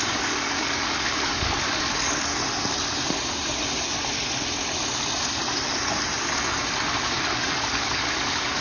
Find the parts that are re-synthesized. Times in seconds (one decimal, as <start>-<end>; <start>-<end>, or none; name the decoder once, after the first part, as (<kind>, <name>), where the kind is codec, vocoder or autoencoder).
0.0-2.3 (codec, DAC); 7.2-8.6